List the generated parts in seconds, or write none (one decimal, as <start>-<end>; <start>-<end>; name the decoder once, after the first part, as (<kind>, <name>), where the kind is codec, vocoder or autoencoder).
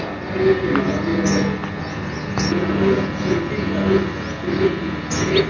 none